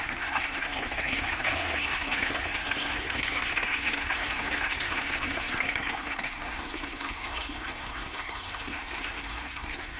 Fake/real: fake